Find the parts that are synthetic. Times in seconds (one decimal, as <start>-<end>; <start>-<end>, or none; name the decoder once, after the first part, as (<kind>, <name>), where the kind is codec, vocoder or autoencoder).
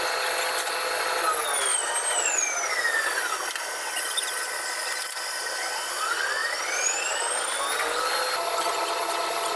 none